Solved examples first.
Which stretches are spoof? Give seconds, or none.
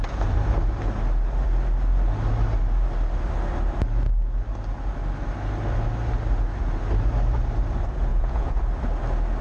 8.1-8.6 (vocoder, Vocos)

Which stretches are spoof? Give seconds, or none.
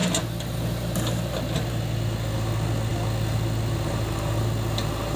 none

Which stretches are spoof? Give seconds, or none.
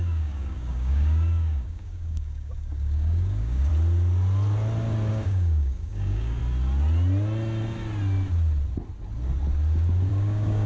0.0-3.7 (codec, DAC); 5.1-6.4; 10.1-10.7